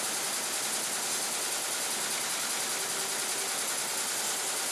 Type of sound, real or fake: real